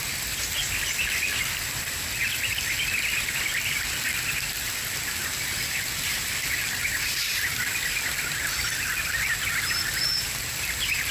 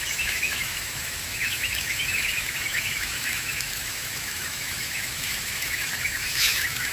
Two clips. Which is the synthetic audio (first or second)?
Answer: second